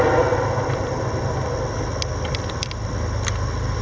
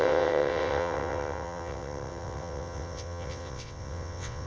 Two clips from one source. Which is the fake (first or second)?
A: second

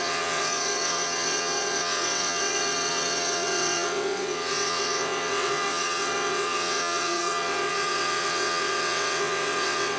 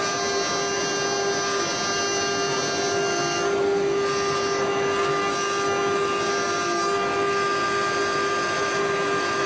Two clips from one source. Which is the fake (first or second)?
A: first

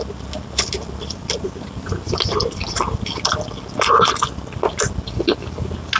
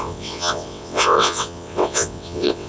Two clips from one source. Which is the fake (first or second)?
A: second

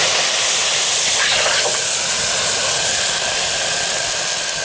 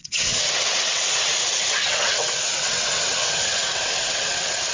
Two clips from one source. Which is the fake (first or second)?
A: second